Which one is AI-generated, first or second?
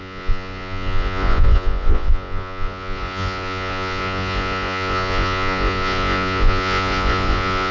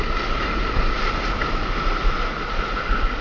first